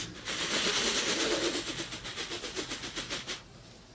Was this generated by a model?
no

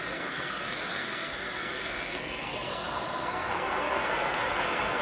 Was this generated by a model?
yes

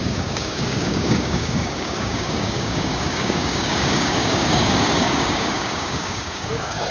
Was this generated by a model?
yes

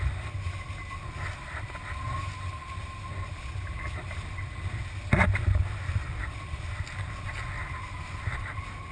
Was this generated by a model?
no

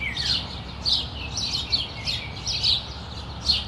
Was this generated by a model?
no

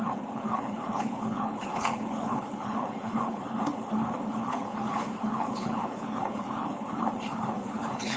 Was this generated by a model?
yes